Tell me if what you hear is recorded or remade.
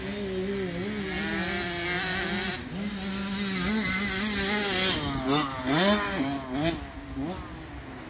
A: recorded